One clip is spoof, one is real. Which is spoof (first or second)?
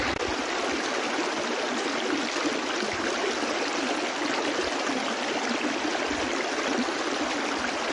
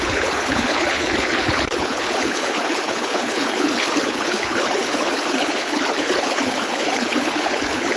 second